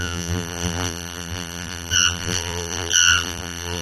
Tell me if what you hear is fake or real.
fake